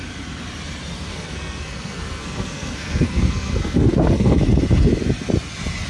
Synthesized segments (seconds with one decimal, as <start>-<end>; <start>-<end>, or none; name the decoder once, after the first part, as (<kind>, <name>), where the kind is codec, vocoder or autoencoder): 1.1-4.4 (codec, SNAC)

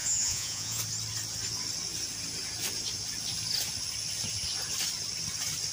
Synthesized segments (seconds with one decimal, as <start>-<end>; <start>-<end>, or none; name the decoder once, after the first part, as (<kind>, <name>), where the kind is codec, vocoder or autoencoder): 0.0-0.8 (vocoder, Vocos)

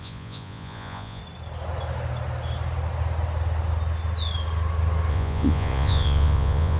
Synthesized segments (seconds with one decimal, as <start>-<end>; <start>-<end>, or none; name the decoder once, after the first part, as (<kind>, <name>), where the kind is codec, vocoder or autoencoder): 0.0-1.2 (vocoder, Vocos); 5.1-6.8

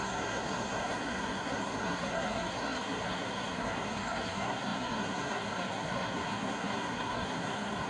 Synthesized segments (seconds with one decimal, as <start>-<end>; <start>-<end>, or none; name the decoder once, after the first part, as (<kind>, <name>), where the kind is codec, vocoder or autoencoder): 0.0-7.9 (codec, SNAC)

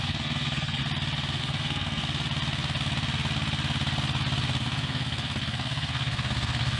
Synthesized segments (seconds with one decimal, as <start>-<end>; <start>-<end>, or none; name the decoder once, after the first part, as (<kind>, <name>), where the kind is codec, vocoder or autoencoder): 0.0-0.8 (codec, SNAC); 1.4-2.0; 4.6-6.8

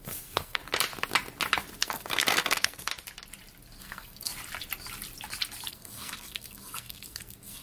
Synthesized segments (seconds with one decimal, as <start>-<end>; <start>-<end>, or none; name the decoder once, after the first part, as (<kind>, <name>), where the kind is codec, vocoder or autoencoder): 0.0-0.6 (codec, SNAC); 1.8-2.9; 3.8-4.3; 5.7-7.6

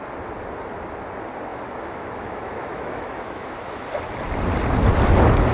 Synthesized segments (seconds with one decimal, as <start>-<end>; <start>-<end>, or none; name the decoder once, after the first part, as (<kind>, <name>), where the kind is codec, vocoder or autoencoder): 1.5-3.9 (autoencoder, DAC-VAE)

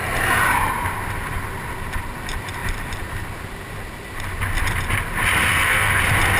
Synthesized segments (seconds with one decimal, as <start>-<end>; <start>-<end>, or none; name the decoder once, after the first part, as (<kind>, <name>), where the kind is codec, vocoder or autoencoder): 5.5-6.0 (codec, SNAC)